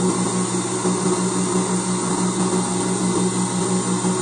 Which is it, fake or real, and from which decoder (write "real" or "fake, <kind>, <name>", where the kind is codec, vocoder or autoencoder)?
real